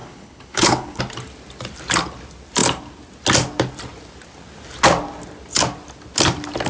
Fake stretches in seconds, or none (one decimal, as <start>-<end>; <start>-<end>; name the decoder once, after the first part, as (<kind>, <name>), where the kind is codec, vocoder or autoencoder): 0.0-1.0 (codec, HILCodec)